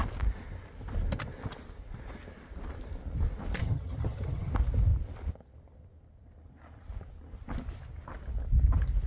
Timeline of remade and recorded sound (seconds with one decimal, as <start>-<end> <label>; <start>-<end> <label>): 0.0-3.6 recorded; 3.6-4.5 remade; 4.5-9.1 recorded